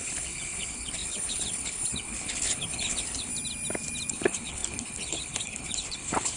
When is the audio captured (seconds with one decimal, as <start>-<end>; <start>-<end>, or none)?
3.3-4.1